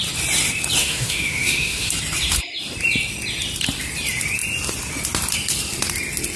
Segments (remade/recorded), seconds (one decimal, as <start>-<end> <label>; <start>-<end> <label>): 0.0-0.8 recorded; 0.8-1.9 remade; 1.9-6.4 recorded